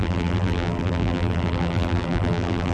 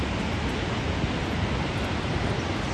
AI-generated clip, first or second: first